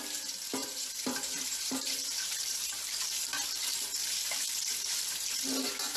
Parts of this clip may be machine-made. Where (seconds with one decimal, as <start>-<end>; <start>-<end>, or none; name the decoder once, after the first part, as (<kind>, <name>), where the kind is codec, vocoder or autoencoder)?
0.6-2.7 (vocoder, BigVGAN v2); 4.0-5.4